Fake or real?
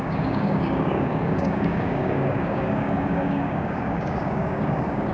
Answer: fake